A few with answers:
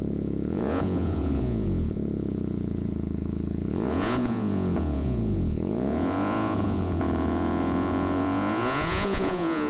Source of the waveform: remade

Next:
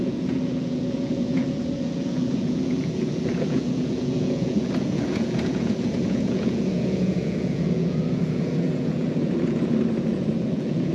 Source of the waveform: remade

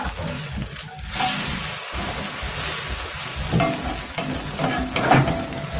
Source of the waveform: recorded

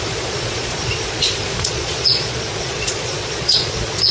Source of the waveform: remade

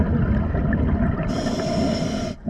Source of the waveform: recorded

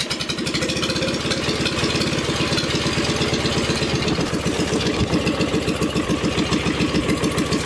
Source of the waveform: recorded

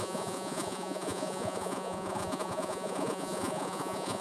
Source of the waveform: remade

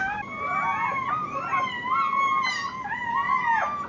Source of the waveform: recorded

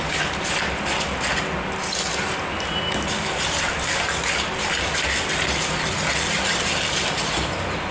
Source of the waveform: recorded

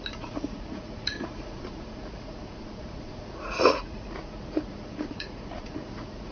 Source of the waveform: remade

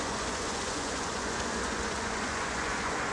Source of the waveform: remade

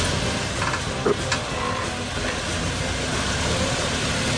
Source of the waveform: recorded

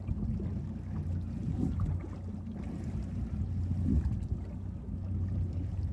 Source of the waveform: recorded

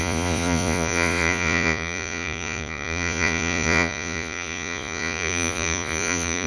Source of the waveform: remade